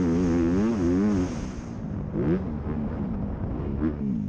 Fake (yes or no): no